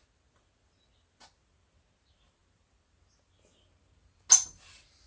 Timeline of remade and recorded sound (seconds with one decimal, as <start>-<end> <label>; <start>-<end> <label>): 0.0-5.1 recorded